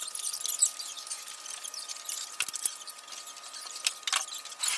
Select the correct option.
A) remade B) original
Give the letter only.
B